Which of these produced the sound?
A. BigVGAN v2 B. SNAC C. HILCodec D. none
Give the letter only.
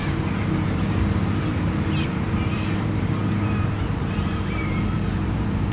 A